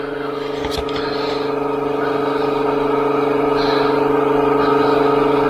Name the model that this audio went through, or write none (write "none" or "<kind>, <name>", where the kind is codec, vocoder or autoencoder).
none